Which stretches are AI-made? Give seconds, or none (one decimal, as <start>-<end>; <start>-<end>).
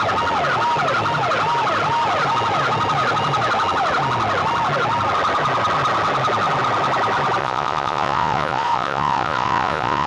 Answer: 7.4-10.1